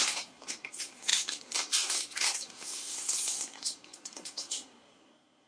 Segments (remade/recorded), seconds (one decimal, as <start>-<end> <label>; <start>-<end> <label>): 0.0-5.5 remade